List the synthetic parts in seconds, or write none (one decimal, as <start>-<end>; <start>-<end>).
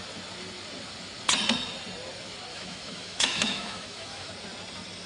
2.5-4.3